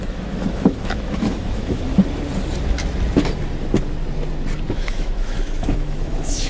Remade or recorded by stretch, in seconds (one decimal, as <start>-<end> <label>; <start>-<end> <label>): 0.0-1.9 remade; 1.9-4.7 recorded; 4.7-6.5 remade